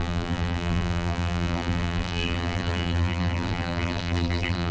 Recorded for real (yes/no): no